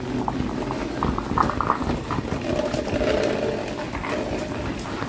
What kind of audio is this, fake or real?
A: real